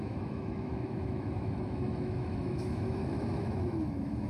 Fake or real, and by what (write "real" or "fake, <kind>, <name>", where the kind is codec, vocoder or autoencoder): fake, autoencoder, DAC-VAE